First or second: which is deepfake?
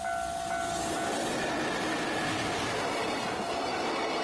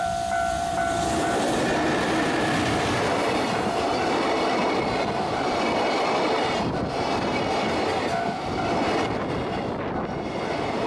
second